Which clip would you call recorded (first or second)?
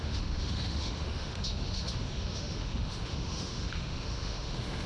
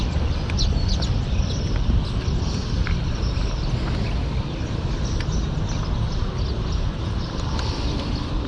second